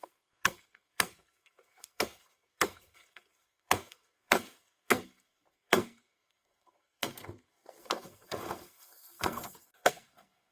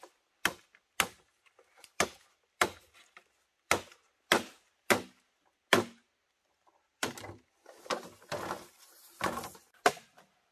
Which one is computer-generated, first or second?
first